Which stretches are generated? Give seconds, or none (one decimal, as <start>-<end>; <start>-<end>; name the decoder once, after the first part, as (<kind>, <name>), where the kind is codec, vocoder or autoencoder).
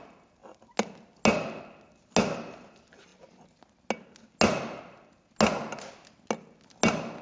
none